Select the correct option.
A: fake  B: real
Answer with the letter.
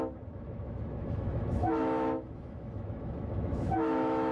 A